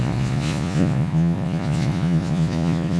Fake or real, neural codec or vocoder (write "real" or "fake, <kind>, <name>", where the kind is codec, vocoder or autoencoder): fake, vocoder, Vocos